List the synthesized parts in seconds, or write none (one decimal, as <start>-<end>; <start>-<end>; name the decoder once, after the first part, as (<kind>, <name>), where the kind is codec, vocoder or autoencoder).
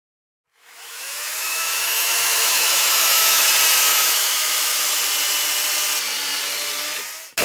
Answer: 0.5-3.5 (autoencoder, DAC-VAE); 3.9-5.0